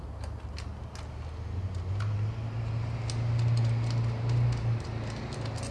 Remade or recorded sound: recorded